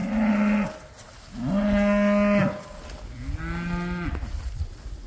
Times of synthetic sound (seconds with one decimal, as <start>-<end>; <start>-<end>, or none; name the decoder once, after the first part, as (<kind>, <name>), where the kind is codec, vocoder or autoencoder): none